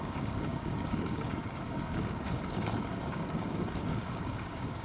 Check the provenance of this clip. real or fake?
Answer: fake